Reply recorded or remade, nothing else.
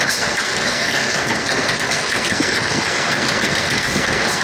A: remade